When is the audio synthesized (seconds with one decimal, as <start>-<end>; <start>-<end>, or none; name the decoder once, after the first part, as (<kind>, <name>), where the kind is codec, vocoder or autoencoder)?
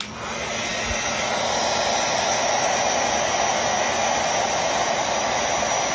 none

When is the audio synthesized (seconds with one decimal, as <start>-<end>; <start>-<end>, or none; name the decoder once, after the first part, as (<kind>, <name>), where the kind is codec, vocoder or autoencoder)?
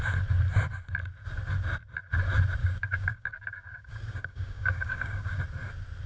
2.6-5.4 (codec, DAC)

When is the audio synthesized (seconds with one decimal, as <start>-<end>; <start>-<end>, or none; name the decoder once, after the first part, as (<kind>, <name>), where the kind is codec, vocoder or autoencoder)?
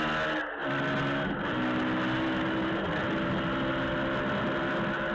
none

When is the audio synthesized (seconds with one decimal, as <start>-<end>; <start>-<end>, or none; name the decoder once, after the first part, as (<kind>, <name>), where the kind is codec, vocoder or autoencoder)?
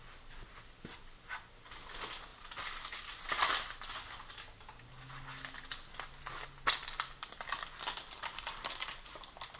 none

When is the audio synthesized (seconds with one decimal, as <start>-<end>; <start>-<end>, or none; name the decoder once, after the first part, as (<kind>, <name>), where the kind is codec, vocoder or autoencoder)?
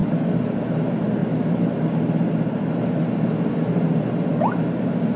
0.0-0.6 (codec, DAC)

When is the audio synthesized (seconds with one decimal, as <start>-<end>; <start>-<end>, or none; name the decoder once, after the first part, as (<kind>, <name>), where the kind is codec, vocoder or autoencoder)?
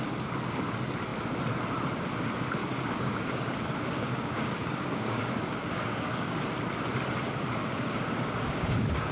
2.6-6.4 (codec, DAC); 7.6-9.1